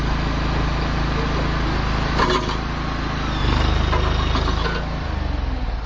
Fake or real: real